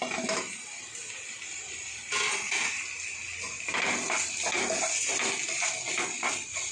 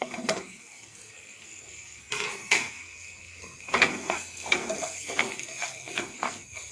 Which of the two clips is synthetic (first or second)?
second